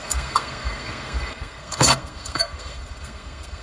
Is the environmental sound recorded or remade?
remade